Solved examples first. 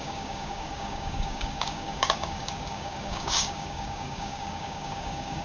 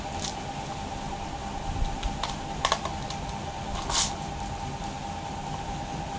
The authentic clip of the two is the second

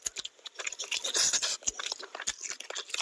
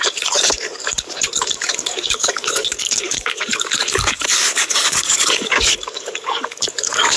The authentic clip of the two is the first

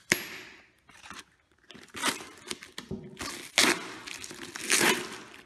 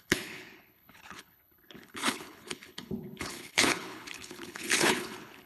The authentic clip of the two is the first